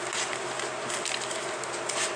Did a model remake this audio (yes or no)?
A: no